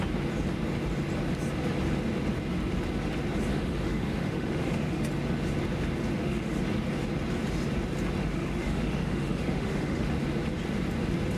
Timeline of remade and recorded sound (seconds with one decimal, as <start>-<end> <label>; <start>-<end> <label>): 0.0-3.5 recorded; 3.5-5.0 remade; 5.0-6.1 recorded; 6.1-6.6 remade; 6.6-8.2 recorded; 8.2-10.1 remade; 10.1-11.4 recorded